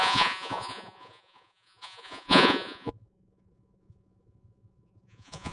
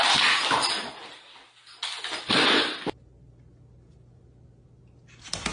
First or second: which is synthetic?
first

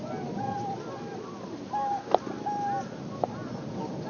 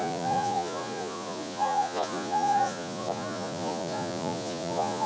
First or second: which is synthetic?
second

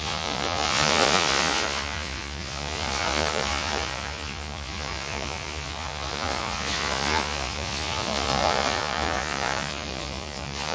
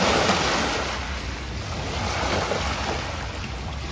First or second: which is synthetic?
first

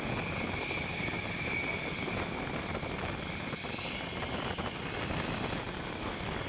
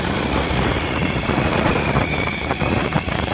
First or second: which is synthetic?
second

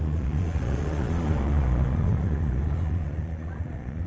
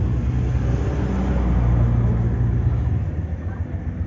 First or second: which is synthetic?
first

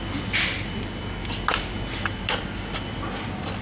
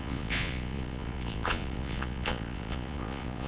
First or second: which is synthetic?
second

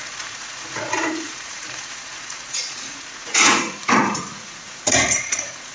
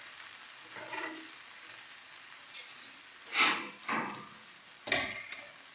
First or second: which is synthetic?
first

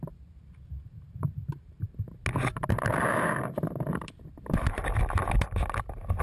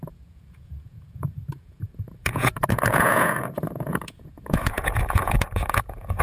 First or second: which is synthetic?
second